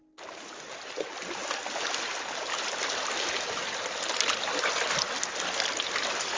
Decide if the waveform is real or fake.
real